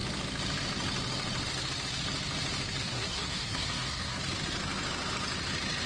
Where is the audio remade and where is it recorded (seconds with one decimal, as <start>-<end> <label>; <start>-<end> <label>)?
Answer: 0.0-2.8 recorded; 2.8-4.2 remade; 4.2-5.9 recorded